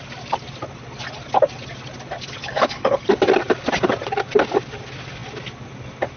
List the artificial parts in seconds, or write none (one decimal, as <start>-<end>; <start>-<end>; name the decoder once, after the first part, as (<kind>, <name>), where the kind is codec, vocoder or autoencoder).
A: 2.4-3.0 (codec, HILCodec)